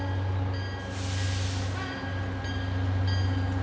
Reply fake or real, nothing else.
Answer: real